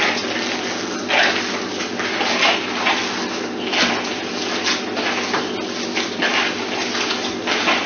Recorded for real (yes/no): yes